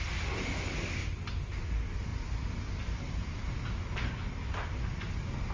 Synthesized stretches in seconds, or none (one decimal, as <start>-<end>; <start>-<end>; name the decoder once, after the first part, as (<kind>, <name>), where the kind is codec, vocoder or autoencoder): none